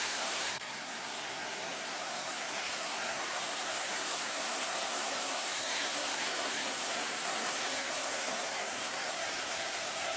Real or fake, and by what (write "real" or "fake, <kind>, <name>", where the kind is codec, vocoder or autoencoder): fake, codec, SNAC